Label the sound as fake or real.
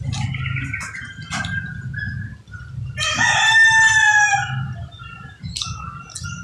real